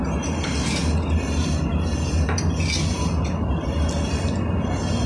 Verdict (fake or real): real